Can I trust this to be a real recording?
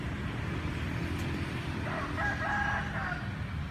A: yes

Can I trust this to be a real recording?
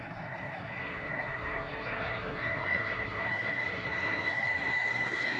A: no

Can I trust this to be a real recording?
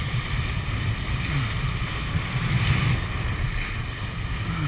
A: yes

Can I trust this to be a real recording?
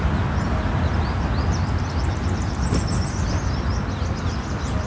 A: yes